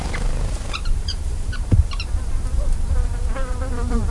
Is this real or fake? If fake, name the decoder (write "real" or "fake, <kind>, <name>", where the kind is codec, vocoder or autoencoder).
fake, vocoder, BigVGAN v2